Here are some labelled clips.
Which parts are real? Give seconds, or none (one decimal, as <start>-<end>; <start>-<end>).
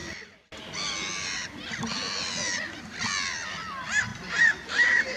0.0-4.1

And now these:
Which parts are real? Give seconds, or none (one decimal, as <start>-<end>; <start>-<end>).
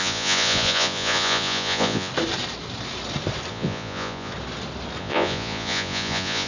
2.1-3.5; 4.3-5.0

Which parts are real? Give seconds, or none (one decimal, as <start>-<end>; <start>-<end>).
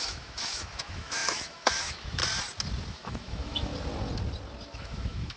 2.2-2.9; 3.7-4.7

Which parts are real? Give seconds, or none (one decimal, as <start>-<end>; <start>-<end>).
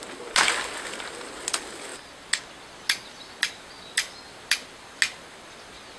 0.0-6.0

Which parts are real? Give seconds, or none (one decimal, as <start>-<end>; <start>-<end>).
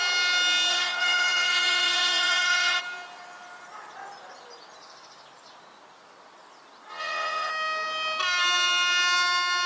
0.0-0.7; 2.8-6.9; 7.5-9.7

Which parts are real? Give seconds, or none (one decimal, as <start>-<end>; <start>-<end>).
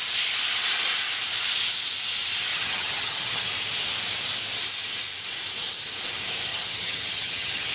0.0-2.5; 3.5-6.5